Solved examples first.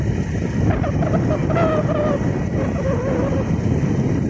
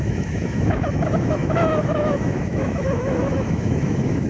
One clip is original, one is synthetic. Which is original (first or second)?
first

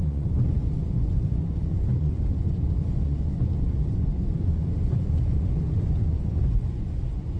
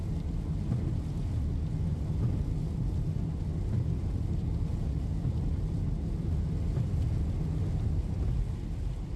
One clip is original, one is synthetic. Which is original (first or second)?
second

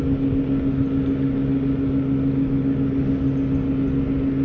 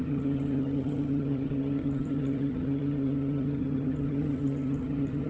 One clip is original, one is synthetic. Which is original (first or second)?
first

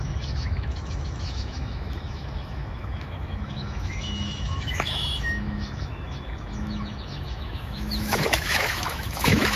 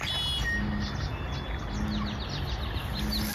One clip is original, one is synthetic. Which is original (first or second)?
second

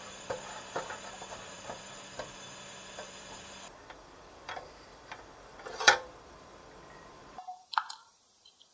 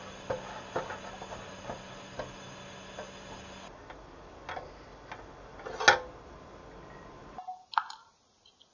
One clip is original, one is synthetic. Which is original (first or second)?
second